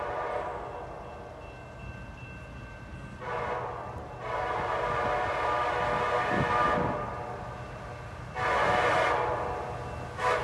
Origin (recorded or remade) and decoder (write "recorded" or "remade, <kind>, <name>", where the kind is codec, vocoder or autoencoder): recorded